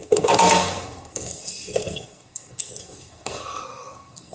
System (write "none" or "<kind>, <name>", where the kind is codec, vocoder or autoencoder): codec, SNAC